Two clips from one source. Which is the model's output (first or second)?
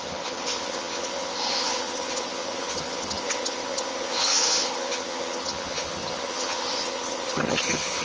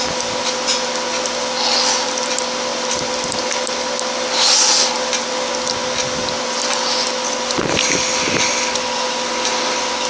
first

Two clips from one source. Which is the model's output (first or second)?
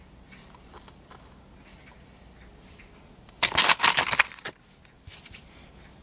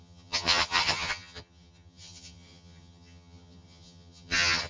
second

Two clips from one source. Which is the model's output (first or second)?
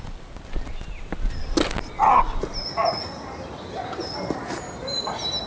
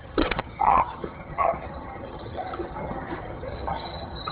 second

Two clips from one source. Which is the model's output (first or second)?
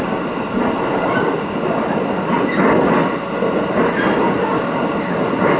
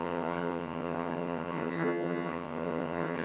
second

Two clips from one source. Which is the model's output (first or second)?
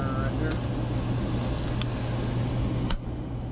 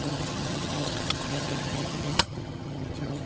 second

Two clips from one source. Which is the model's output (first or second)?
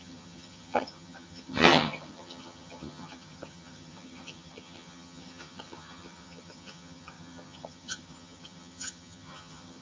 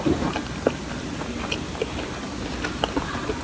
first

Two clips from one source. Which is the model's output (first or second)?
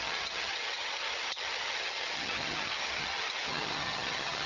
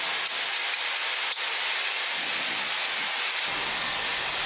first